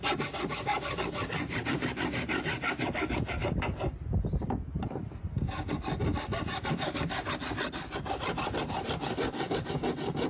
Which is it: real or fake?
real